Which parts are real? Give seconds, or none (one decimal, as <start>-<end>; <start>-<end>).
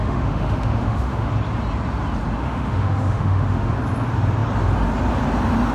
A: 1.3-2.4; 3.7-5.7